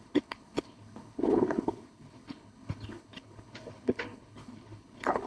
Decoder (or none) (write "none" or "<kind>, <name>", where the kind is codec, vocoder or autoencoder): codec, HILCodec